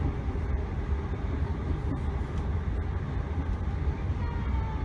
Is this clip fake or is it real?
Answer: real